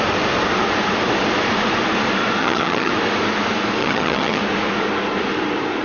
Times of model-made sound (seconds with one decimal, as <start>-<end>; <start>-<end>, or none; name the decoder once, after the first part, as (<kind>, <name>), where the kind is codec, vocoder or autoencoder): 2.4-2.9 (vocoder, HiFi-GAN); 3.8-4.4

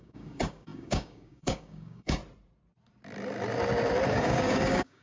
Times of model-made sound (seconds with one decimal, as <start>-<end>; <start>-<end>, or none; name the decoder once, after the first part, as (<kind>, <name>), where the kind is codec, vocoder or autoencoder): 0.0-2.2 (codec, DAC); 4.1-5.0

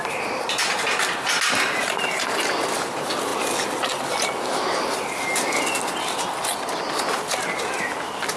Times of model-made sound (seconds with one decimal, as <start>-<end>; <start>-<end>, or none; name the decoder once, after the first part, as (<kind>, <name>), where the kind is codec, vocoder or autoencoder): none